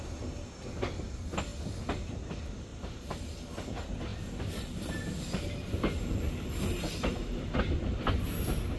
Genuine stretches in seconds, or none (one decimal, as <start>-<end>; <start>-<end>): 0.0-2.7; 3.3-4.1; 7.6-8.8